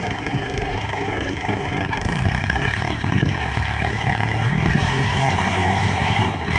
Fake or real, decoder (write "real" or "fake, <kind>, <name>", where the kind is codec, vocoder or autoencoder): fake, codec, SNAC